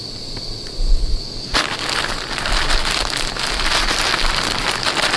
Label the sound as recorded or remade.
recorded